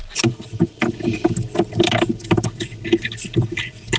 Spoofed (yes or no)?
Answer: no